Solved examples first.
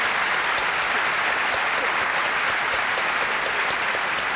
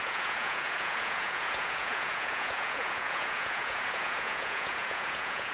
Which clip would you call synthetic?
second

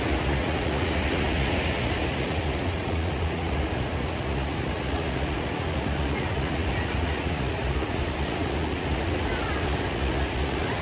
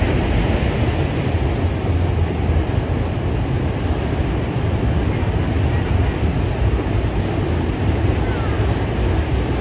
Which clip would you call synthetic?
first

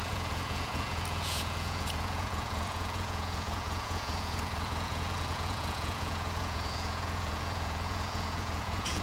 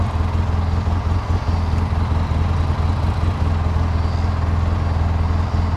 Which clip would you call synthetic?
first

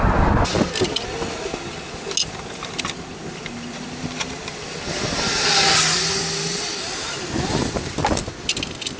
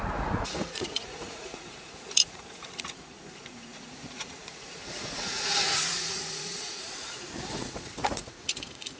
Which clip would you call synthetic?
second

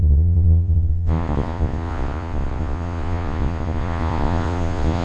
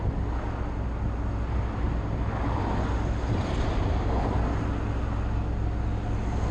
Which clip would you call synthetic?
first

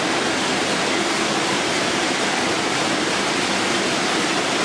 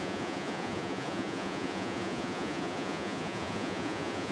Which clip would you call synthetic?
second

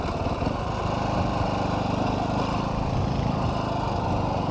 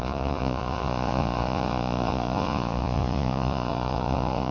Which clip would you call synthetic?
second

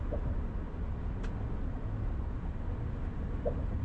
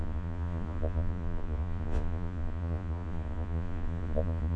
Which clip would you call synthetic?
second